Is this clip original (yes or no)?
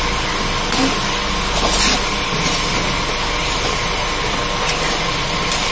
yes